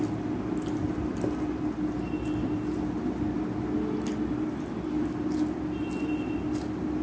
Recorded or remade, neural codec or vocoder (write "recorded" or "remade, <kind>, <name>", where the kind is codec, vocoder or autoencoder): recorded